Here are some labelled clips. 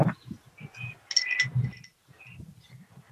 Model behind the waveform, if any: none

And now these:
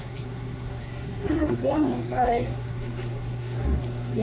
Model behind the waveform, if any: codec, SNAC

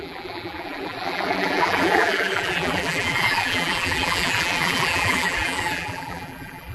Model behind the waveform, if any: vocoder, BigVGAN v2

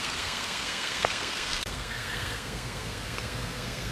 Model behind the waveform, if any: codec, SNAC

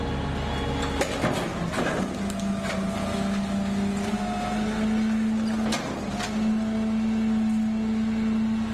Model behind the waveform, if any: none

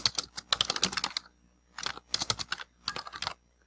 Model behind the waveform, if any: none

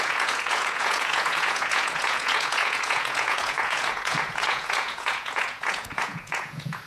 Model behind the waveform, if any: vocoder, Vocos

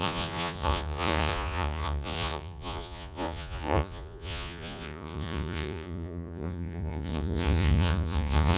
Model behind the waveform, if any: vocoder, Vocos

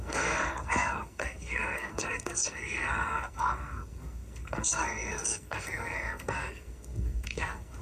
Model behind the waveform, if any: codec, SNAC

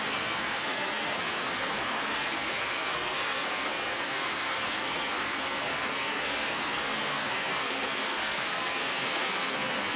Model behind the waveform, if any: codec, SNAC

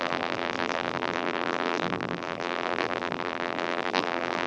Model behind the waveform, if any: vocoder, BigVGAN v2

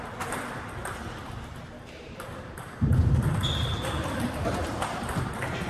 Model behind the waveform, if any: vocoder, BigVGAN v2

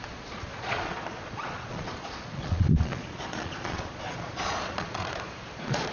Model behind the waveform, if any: vocoder, Vocos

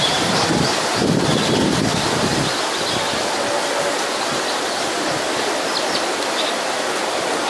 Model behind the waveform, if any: none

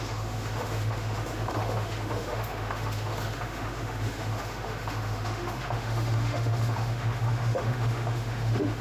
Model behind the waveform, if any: autoencoder, DAC-VAE